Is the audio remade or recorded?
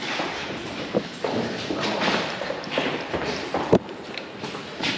remade